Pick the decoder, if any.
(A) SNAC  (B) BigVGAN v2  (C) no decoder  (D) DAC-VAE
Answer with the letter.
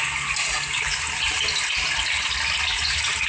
C